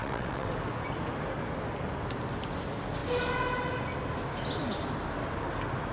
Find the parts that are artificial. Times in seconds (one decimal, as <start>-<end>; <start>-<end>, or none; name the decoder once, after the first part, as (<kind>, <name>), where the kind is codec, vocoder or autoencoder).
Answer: 0.0-0.5 (vocoder, WaveNeXt)